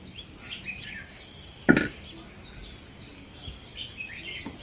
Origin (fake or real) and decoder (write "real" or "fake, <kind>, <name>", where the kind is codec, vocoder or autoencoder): real